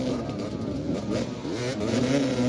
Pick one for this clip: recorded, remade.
recorded